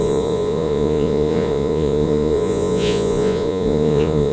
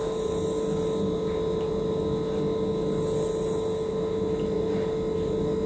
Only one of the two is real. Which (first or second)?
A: second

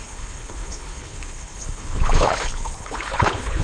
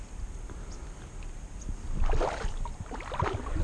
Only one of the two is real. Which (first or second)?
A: second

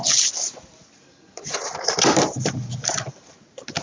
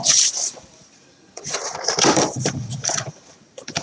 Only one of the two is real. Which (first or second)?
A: first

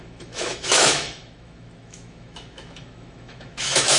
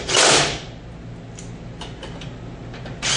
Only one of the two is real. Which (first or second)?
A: second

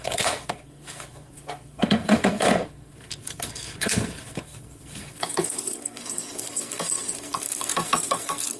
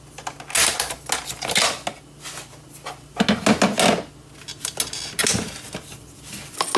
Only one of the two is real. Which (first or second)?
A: second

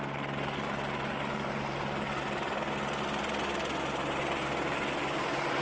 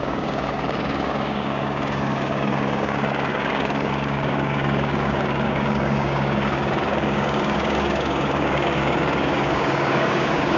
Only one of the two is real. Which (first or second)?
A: first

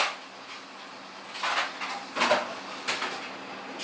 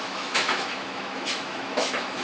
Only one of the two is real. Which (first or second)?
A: first